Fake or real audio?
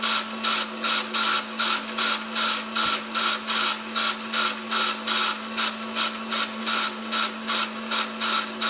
real